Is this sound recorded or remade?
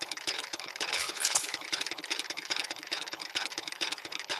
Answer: remade